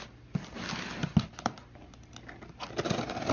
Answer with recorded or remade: recorded